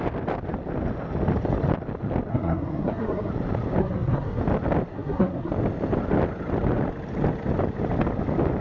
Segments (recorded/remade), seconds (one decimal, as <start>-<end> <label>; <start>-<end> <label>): 0.0-2.3 recorded; 2.3-3.3 remade; 3.3-3.8 recorded; 3.8-4.4 remade; 4.4-4.9 recorded; 4.9-5.5 remade; 5.5-8.6 recorded